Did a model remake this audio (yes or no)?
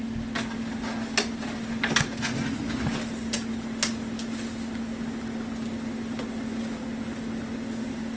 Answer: no